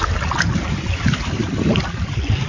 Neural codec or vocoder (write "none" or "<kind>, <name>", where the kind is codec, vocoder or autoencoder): vocoder, BigVGAN v2